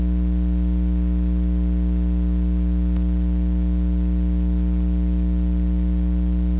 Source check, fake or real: real